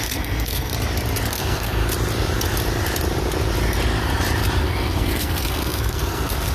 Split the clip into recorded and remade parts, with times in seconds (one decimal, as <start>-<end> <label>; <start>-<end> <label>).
0.0-0.7 remade; 0.7-1.3 recorded; 1.3-1.8 remade; 1.8-4.6 recorded; 4.6-6.5 remade